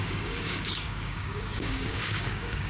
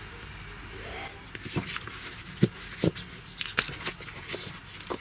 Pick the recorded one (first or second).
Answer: second